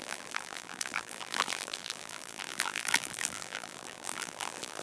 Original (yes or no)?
no